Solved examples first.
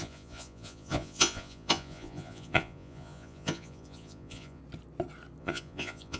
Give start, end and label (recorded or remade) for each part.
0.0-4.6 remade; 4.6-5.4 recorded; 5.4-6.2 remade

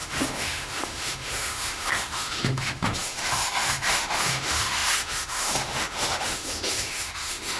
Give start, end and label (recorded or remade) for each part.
0.0-7.6 remade

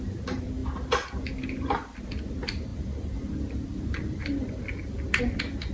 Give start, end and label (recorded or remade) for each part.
0.0-0.6 remade; 0.6-1.5 recorded; 1.5-5.7 remade

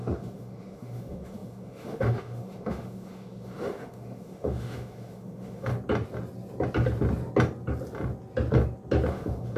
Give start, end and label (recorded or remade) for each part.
0.0-5.7 remade; 5.7-9.1 recorded; 9.1-9.6 remade

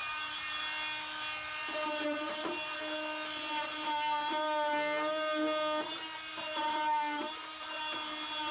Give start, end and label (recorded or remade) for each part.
0.0-0.6 remade; 0.6-1.6 recorded; 1.6-2.8 remade; 2.8-6.3 recorded; 6.3-7.8 remade; 7.8-8.5 recorded